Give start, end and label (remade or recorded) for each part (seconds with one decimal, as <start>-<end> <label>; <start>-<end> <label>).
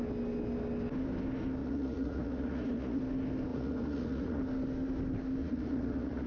0.0-1.6 recorded; 1.6-3.0 remade; 3.0-3.5 recorded; 3.5-4.4 remade; 4.4-5.4 recorded; 5.4-6.3 remade